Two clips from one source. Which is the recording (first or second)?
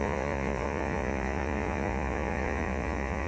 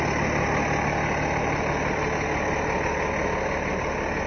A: second